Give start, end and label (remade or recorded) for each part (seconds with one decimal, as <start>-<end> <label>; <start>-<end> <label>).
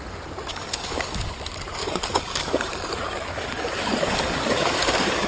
0.0-0.5 recorded; 0.5-1.3 remade; 1.3-1.8 recorded; 1.8-5.3 remade